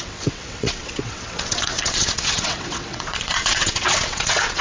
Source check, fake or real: fake